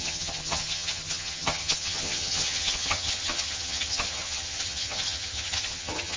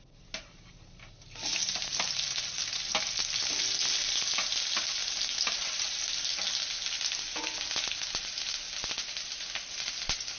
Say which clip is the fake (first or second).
first